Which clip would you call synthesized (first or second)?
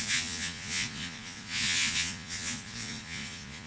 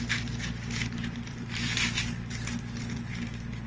first